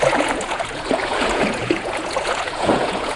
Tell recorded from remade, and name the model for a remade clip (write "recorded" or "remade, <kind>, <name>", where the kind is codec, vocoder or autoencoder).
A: remade, vocoder, Vocos